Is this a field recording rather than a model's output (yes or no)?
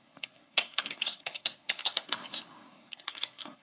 no